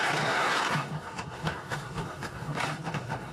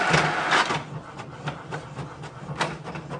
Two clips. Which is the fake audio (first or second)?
first